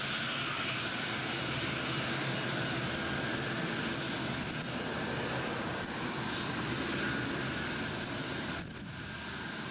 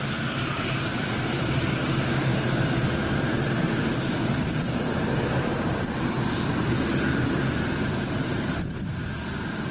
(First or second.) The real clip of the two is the first